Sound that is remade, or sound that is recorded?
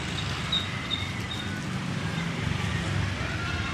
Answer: recorded